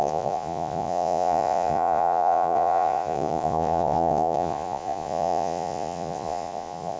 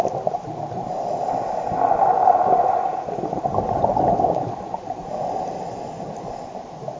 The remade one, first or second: first